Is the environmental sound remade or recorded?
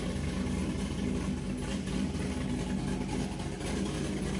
recorded